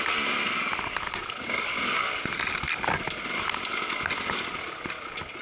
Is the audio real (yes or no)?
yes